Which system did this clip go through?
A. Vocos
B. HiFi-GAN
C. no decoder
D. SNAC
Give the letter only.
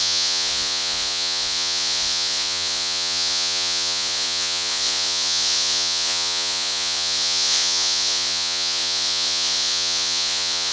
A